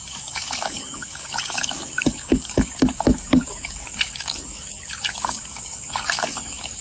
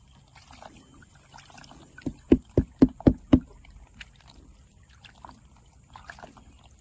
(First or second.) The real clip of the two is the second